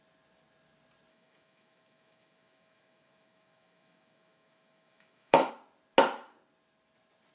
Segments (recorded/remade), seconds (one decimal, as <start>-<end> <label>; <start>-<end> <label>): 0.0-1.1 recorded; 1.1-5.5 remade; 5.5-7.3 recorded